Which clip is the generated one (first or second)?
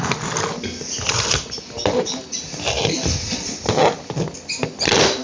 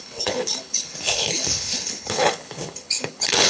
second